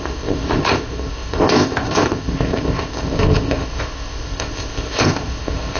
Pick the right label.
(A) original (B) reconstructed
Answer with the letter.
B